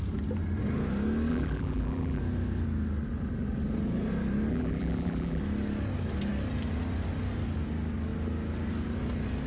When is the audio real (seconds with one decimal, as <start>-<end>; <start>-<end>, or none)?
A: 0.0-1.3; 2.2-4.5; 5.4-9.5